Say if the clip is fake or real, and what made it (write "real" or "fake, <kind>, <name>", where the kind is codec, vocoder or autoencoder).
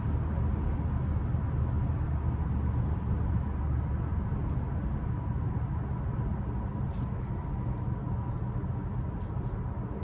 real